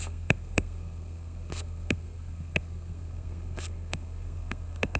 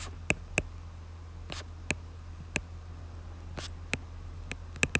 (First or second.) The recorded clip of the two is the second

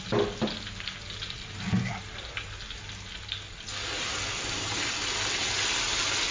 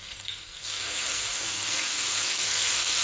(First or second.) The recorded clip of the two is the first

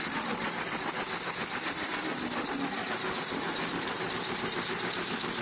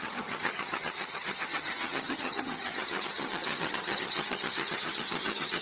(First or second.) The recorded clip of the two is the first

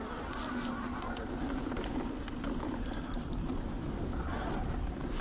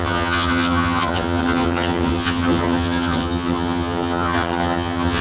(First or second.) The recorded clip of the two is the first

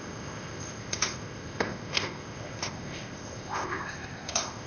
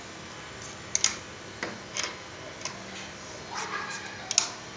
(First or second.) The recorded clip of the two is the second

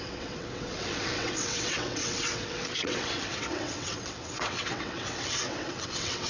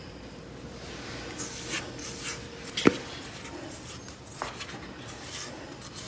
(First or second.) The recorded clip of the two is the second